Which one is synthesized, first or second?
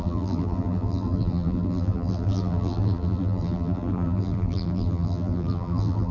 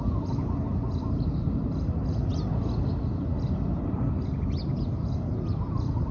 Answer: first